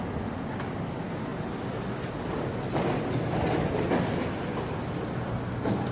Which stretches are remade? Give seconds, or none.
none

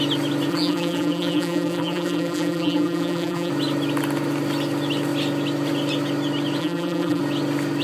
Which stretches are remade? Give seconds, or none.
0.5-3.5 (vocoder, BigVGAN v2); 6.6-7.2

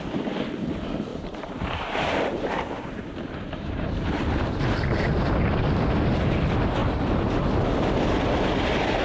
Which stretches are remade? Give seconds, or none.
1.1-4.6 (vocoder, BigVGAN v2)